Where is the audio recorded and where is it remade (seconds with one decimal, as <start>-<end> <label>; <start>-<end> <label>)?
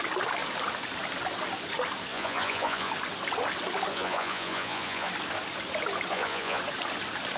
0.0-2.1 recorded; 2.1-2.9 remade; 2.9-3.9 recorded; 3.9-5.1 remade; 5.1-6.1 recorded; 6.1-6.6 remade; 6.6-7.4 recorded